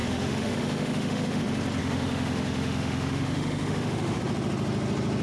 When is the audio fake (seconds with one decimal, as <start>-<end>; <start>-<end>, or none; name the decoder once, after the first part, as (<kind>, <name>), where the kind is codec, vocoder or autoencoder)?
0.0-1.4 (autoencoder, DAC-VAE); 1.8-4.2

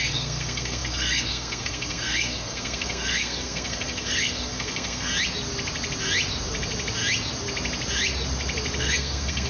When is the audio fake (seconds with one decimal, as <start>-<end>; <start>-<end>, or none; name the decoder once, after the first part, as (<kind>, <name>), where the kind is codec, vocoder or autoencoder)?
0.0-5.1 (codec, SNAC); 8.8-9.5

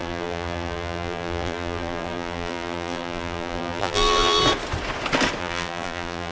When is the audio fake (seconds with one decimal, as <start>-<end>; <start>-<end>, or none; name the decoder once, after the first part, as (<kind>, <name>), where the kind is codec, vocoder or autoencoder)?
0.0-4.4 (vocoder, BigVGAN v2); 5.4-6.3

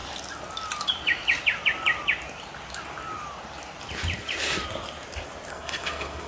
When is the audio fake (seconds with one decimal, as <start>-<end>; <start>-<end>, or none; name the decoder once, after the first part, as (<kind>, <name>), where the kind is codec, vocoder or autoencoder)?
5.5-6.3 (codec, SNAC)

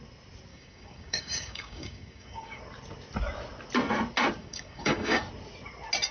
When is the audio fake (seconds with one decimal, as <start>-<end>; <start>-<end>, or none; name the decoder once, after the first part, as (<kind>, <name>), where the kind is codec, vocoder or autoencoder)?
0.5-2.6 (codec, DAC); 4.4-5.2

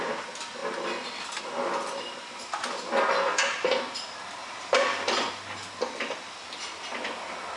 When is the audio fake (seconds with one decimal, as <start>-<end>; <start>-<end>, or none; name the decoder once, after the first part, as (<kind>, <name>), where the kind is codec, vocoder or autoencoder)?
4.4-5.3 (vocoder, BigVGAN v2)

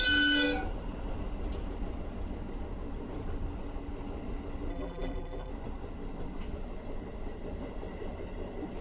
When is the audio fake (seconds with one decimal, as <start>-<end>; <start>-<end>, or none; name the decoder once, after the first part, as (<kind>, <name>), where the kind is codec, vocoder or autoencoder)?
4.7-5.5 (vocoder, BigVGAN v2)

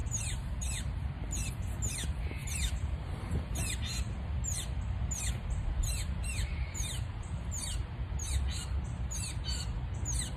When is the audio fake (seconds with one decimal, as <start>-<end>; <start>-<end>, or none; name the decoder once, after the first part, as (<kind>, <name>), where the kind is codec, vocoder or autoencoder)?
0.0-1.5 (vocoder, BigVGAN v2); 2.4-3.3; 6.3-7.8